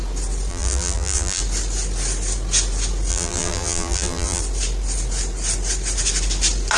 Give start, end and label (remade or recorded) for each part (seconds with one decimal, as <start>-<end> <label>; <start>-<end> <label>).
0.0-0.5 recorded; 0.5-1.4 remade; 1.4-3.1 recorded; 3.1-4.4 remade; 4.4-6.8 recorded